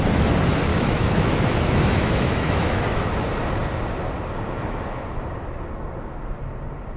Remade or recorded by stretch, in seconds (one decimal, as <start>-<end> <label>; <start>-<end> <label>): 0.0-0.7 recorded; 0.7-3.0 remade; 3.0-7.0 recorded